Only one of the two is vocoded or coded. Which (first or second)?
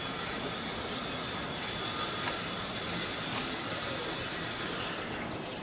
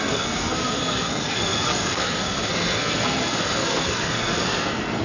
second